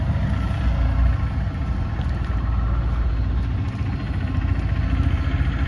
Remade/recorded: recorded